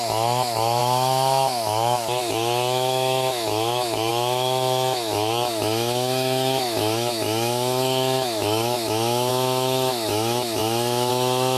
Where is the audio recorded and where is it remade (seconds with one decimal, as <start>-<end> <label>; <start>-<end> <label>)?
0.0-11.6 remade